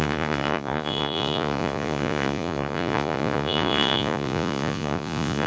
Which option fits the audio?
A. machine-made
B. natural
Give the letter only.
A